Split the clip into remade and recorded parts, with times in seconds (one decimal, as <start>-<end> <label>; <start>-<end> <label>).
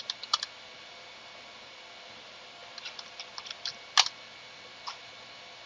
0.0-5.7 recorded